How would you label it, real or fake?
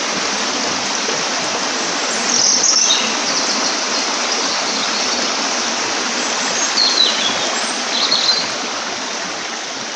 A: real